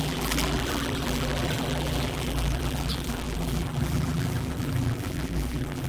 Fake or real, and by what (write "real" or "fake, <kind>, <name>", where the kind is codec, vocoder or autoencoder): fake, vocoder, BigVGAN v2